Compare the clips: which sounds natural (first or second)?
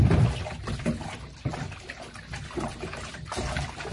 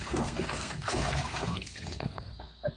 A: first